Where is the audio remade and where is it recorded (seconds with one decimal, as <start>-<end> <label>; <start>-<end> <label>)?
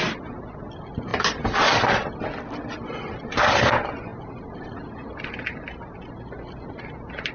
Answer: 0.0-7.3 recorded